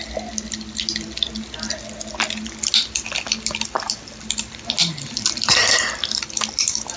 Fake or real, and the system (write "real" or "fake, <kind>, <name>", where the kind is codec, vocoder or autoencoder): real